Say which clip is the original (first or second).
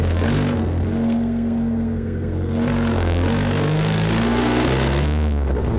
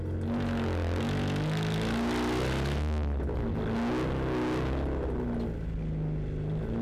second